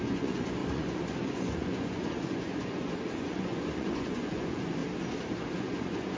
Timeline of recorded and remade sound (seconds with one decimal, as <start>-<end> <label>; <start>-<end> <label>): 0.0-4.8 remade; 4.8-5.5 recorded; 5.5-6.2 remade